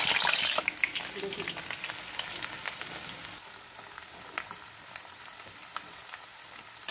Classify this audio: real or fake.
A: real